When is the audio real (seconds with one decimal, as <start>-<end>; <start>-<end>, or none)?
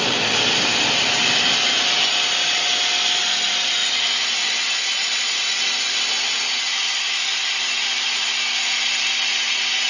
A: 0.0-9.9